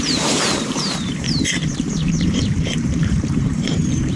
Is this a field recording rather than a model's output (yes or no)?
no